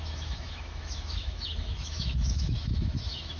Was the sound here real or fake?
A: fake